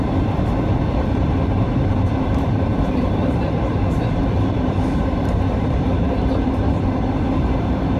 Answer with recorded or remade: remade